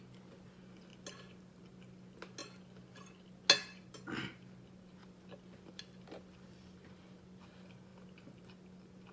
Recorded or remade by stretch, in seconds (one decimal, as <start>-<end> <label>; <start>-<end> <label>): 0.0-9.1 recorded